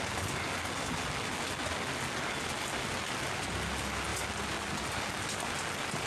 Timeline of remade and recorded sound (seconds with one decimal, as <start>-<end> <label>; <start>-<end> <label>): 0.0-6.1 recorded